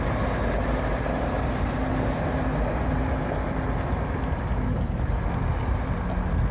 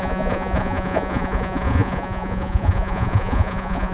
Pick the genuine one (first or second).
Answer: first